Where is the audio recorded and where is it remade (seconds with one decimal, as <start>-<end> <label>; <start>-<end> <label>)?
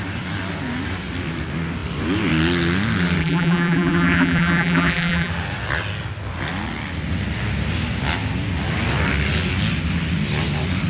0.0-3.2 recorded; 3.2-5.3 remade; 5.3-10.9 recorded